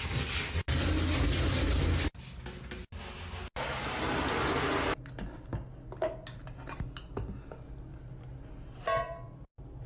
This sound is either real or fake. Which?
real